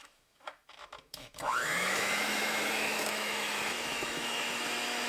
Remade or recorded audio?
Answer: remade